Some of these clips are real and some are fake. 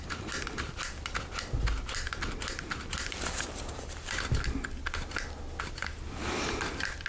real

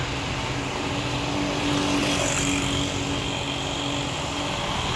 real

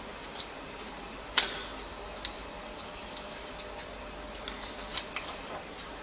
real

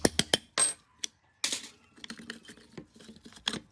real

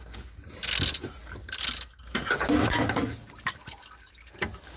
real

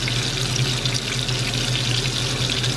real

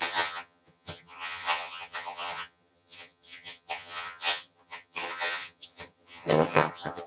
fake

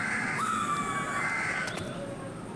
real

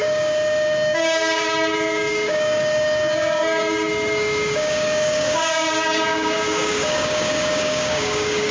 fake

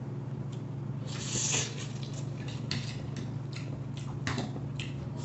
real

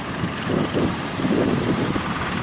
fake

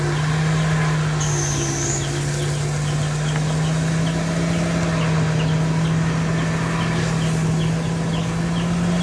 real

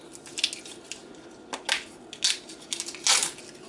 real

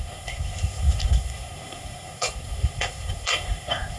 fake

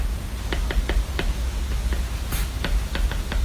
real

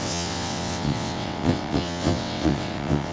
fake